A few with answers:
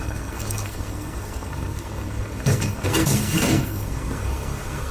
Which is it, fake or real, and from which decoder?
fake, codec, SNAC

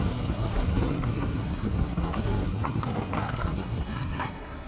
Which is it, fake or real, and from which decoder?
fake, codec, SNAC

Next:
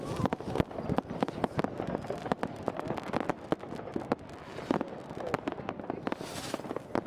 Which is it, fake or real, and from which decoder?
real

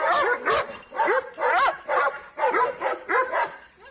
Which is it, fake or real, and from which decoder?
real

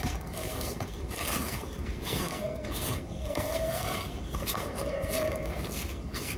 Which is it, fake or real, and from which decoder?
fake, codec, SNAC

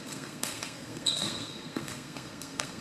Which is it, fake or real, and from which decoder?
fake, codec, SNAC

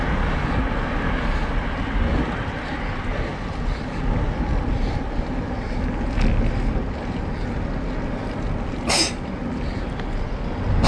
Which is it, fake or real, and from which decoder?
real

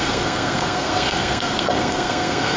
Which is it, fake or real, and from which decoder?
fake, codec, SNAC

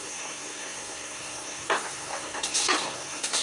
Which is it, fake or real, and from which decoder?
fake, codec, SNAC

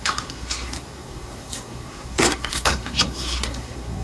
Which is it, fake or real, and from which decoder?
fake, codec, SNAC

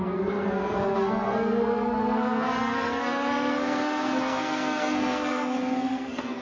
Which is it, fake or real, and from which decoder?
fake, codec, SNAC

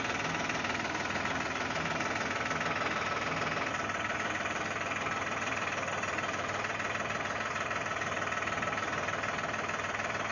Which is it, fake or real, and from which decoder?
real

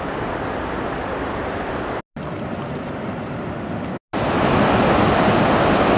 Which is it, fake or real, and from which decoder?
real